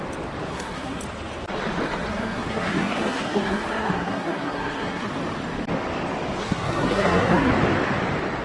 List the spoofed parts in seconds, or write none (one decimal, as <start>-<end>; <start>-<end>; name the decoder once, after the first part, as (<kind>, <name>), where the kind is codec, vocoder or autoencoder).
0.5-1.0 (codec, SNAC); 2.1-5.1; 6.4-7.5